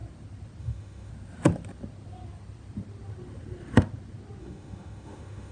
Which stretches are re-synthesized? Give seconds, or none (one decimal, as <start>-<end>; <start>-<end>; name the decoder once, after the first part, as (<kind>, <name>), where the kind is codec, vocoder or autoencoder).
0.6-1.1 (autoencoder, DAC-VAE); 4.4-5.5